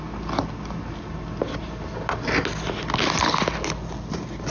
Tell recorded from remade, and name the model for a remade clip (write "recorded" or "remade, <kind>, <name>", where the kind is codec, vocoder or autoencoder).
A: recorded